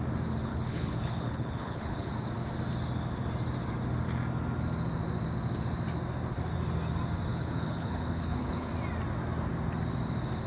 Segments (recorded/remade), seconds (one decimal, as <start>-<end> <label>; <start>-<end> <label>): 0.0-0.5 recorded; 0.5-2.1 remade; 2.1-7.3 recorded; 7.3-8.7 remade; 8.7-10.5 recorded